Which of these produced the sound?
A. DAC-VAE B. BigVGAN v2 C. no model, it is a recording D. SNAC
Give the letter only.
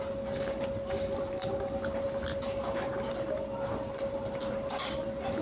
B